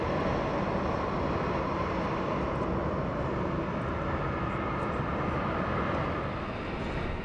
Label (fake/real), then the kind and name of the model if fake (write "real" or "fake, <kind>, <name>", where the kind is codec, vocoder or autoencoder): real